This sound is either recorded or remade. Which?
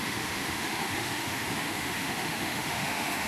remade